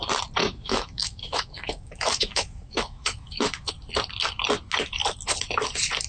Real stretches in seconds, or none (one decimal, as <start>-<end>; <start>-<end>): 0.0-0.4; 3.7-6.1